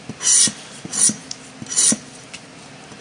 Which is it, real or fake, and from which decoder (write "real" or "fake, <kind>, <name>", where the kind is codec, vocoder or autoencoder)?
real